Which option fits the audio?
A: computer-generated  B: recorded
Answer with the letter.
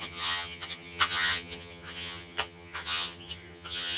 A